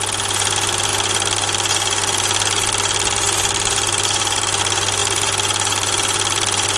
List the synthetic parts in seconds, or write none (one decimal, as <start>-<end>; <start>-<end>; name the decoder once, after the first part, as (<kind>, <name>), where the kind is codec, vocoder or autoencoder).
none

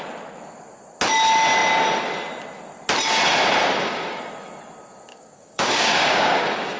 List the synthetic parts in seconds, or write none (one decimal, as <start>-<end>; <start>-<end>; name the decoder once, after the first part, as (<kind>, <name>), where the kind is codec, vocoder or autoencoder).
3.6-4.2 (codec, DAC); 5.1-6.8

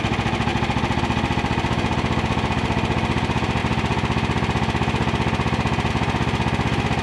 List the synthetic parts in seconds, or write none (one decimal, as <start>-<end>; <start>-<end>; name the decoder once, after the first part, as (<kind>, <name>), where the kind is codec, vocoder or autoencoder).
none

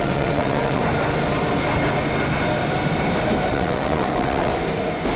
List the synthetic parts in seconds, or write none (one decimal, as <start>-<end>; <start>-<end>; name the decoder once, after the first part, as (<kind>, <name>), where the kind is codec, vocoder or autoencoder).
0.0-0.8 (vocoder, WaveNeXt); 3.5-4.5

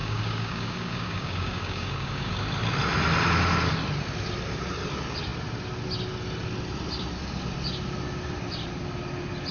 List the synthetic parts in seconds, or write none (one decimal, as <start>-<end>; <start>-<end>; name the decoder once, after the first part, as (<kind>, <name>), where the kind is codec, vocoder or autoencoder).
0.0-2.3 (codec, DAC)

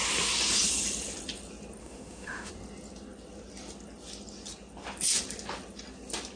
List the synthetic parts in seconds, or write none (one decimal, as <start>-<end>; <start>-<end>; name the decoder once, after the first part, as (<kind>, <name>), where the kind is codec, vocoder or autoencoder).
1.8-2.5 (autoencoder, DAC-VAE)